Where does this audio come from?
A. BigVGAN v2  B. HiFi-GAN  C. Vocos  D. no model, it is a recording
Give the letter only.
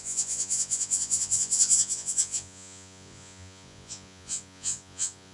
C